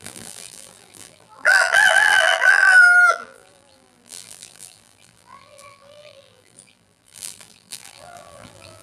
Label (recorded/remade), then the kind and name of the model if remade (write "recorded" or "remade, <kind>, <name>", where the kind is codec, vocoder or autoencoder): remade, vocoder, BigVGAN v2